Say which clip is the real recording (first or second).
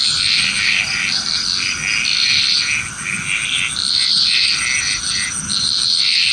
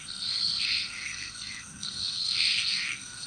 first